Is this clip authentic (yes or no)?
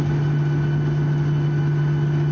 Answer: yes